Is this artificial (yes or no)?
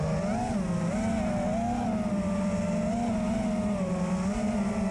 no